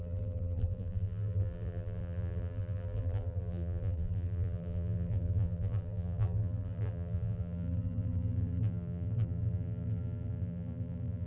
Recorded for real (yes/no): no